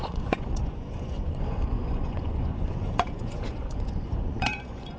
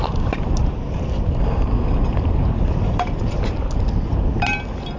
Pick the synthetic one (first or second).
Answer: first